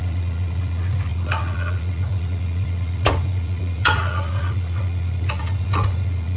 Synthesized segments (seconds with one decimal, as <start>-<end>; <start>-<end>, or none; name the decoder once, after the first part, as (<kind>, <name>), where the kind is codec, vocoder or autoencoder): 0.0-6.4 (vocoder, Vocos)